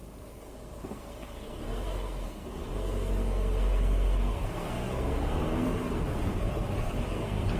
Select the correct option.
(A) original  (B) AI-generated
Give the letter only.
B